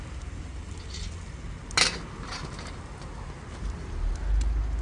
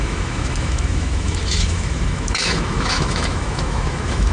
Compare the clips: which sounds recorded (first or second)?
first